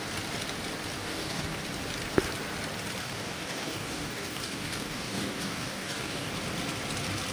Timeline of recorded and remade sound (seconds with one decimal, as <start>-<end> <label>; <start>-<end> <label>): 0.0-1.0 recorded; 1.0-1.6 remade; 1.6-3.0 recorded; 3.0-6.3 remade; 6.3-7.3 recorded